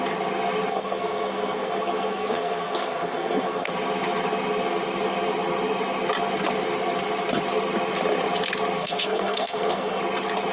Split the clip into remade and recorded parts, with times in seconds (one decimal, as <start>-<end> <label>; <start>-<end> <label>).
0.0-0.7 recorded; 0.7-3.7 remade; 3.7-8.8 recorded; 8.8-10.0 remade; 10.0-10.5 recorded